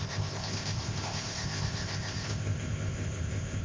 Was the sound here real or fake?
fake